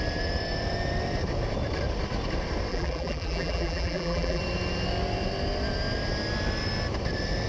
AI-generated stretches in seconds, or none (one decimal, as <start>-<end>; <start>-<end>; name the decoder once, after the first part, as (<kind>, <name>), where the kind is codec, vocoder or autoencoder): 2.7-4.4 (vocoder, BigVGAN v2)